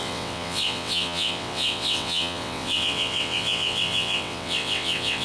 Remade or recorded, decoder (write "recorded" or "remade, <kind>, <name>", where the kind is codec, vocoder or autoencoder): remade, vocoder, WaveNeXt